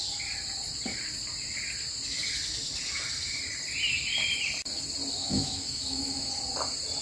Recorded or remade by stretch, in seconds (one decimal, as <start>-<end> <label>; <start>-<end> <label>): 0.0-5.2 recorded; 5.2-6.3 remade; 6.3-7.0 recorded